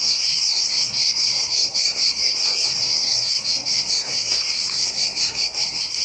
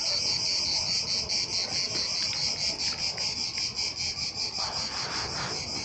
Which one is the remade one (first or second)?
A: first